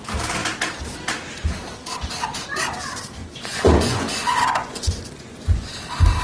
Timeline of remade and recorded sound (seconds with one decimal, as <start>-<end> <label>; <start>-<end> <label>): 0.0-3.2 recorded; 3.2-5.7 remade; 5.7-6.2 recorded